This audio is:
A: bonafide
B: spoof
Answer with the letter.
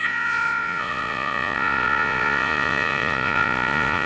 B